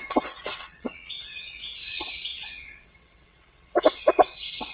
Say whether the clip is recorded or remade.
remade